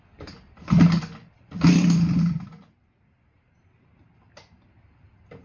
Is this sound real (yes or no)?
yes